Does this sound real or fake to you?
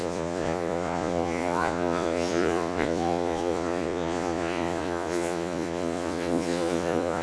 fake